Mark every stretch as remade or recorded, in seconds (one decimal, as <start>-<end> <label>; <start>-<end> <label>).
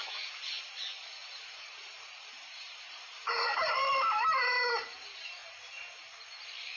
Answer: 0.0-1.2 recorded; 1.2-3.9 remade; 3.9-6.8 recorded